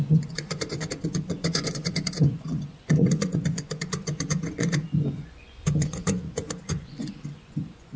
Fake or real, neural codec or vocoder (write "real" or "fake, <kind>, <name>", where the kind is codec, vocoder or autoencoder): fake, vocoder, Vocos